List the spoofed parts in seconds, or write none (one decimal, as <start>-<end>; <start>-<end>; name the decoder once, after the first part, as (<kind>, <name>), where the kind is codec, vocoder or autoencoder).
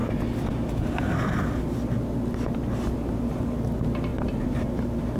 4.1-5.2 (vocoder, BigVGAN v2)